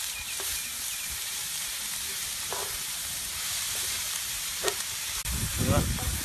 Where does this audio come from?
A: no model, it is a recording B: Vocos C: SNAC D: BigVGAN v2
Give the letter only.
D